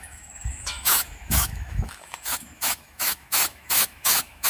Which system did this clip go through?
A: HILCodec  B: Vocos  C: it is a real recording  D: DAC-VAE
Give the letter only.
D